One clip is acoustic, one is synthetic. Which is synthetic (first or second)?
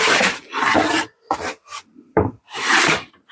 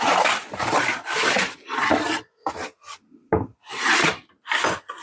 first